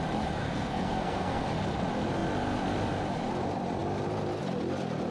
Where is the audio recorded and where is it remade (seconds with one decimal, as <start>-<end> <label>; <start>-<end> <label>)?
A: 0.0-0.4 recorded; 0.4-1.4 remade; 1.4-5.1 recorded